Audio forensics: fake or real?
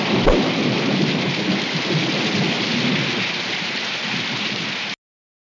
real